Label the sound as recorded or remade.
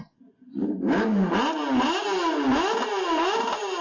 recorded